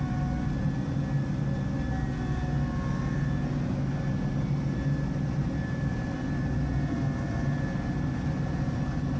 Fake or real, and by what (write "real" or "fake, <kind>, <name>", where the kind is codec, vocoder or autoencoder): real